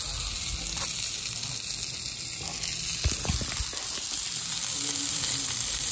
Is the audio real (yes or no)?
yes